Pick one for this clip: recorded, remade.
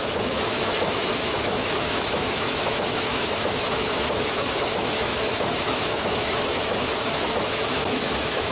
remade